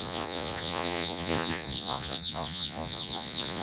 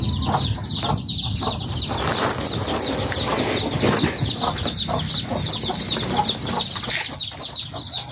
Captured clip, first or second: second